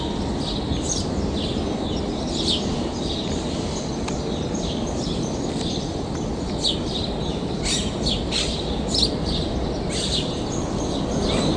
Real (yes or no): yes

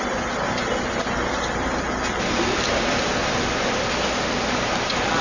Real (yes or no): yes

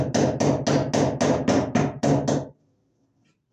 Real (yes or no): yes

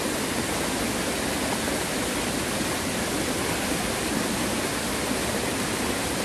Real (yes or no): yes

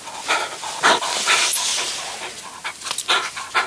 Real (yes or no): yes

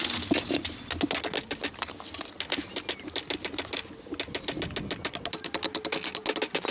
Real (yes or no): yes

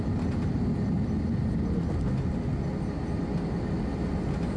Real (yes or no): yes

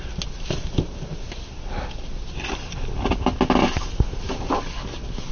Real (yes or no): yes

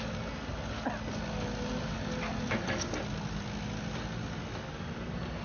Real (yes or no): yes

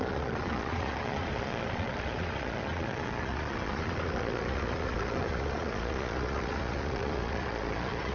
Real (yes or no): no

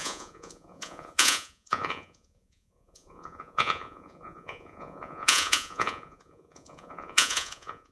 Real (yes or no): no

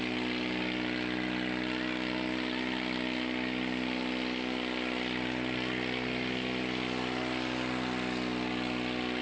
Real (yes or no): yes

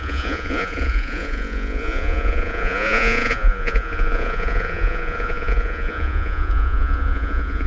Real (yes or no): no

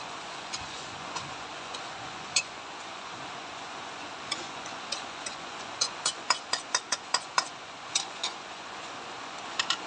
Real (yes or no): no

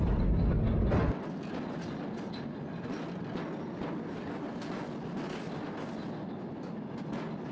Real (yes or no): yes